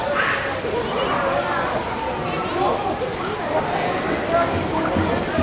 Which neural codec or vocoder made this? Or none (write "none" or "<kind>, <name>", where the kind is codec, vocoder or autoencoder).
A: none